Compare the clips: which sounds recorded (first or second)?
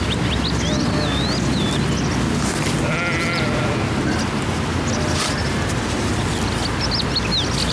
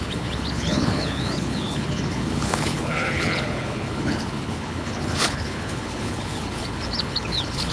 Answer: first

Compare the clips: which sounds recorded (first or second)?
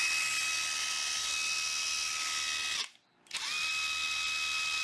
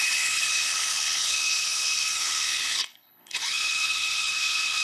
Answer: first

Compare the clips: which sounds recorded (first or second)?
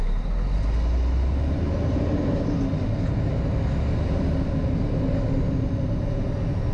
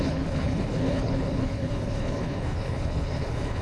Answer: first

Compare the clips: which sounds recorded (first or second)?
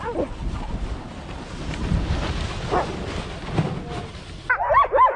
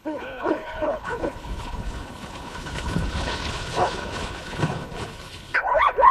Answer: first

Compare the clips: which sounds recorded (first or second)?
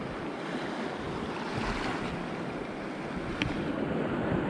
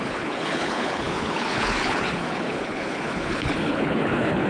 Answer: first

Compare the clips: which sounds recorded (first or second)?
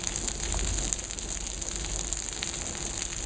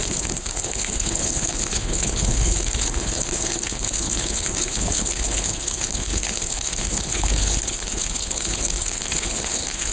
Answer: first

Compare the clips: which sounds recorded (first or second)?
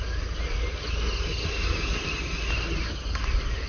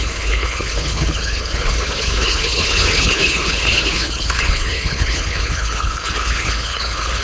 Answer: first